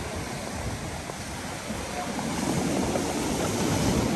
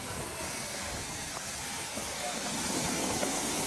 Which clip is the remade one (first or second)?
second